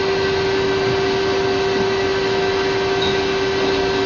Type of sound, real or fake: real